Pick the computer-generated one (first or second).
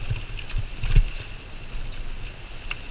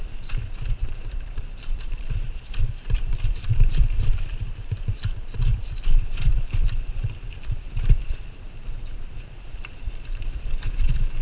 second